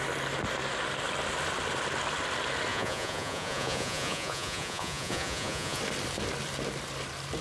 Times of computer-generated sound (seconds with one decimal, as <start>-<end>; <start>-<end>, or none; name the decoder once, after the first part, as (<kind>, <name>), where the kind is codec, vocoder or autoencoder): 2.7-5.8 (vocoder, Vocos)